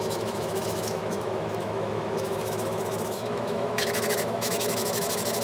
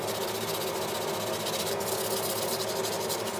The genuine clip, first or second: second